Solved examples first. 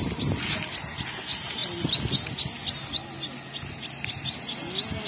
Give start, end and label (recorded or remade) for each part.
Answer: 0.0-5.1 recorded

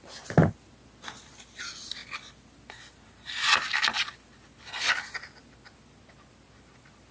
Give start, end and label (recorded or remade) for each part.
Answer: 0.0-7.1 recorded

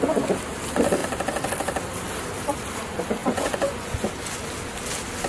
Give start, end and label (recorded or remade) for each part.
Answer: 0.0-3.2 recorded; 3.2-4.1 remade; 4.1-5.3 recorded

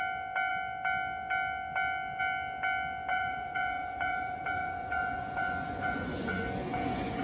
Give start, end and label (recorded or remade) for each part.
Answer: 0.0-3.1 recorded; 3.1-7.2 remade

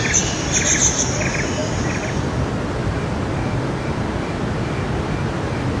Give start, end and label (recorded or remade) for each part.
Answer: 0.0-5.8 recorded

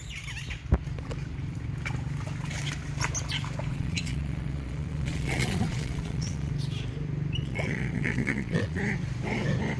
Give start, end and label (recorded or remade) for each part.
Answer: 0.0-3.7 recorded; 3.7-6.5 remade; 6.5-7.4 recorded; 7.4-8.8 remade; 8.8-9.8 recorded

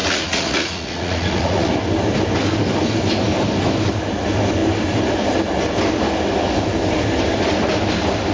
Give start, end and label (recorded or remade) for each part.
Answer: 0.0-1.7 remade; 1.7-8.3 recorded

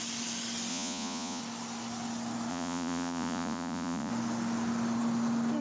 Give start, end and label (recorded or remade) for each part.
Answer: 0.0-0.7 recorded; 0.7-1.4 remade; 1.4-2.5 recorded; 2.5-4.1 remade; 4.1-5.6 recorded